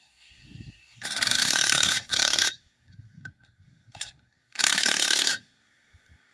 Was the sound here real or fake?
fake